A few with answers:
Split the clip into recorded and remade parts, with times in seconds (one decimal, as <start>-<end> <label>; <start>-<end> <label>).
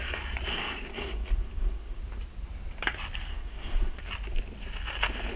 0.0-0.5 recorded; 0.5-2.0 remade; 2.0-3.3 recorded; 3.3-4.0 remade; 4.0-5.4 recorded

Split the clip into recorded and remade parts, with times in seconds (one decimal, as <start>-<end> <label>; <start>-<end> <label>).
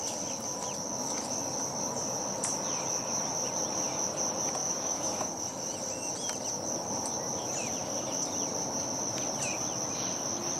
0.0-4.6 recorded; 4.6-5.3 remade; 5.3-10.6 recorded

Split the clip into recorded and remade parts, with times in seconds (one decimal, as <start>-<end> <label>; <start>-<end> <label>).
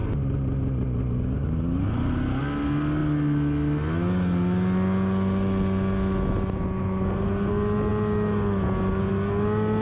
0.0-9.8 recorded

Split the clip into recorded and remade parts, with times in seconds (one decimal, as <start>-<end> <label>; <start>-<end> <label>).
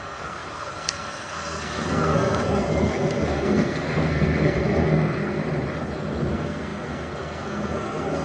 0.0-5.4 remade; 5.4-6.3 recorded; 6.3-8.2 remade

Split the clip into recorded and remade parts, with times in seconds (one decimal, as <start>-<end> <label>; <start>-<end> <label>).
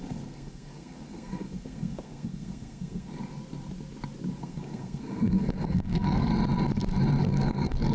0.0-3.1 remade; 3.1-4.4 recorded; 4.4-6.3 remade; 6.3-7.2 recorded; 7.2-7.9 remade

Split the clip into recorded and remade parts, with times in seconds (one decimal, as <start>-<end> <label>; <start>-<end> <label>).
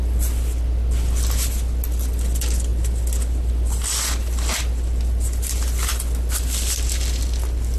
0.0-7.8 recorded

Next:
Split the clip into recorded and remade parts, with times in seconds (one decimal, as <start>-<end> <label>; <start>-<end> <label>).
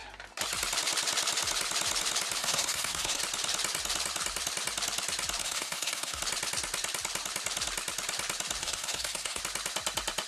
0.0-2.4 recorded; 2.4-3.2 remade; 3.2-5.4 recorded; 5.4-6.2 remade; 6.2-8.6 recorded; 8.6-9.4 remade; 9.4-10.3 recorded